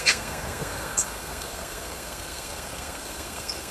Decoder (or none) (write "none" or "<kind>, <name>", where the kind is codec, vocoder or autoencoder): codec, SNAC